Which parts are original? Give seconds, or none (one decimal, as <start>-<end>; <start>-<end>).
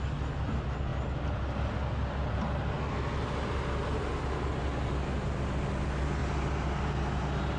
0.0-7.6